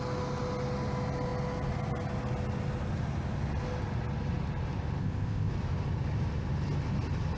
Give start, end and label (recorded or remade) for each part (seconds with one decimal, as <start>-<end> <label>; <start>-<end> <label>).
0.0-5.0 recorded; 5.0-5.5 remade; 5.5-7.4 recorded